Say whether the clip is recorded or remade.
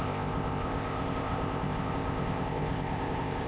remade